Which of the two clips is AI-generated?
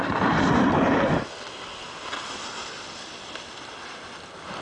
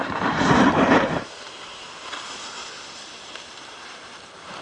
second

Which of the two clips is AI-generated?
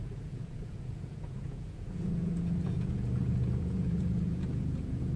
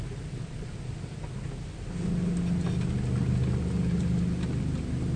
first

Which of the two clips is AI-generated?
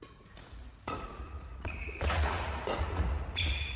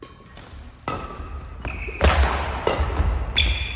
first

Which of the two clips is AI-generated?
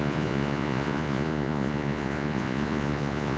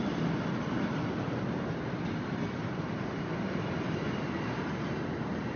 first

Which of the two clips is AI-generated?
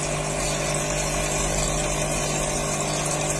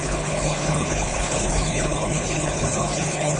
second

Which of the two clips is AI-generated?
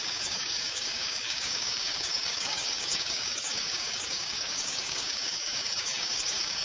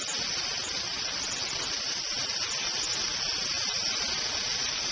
first